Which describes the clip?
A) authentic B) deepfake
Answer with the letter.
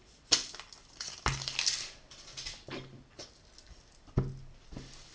A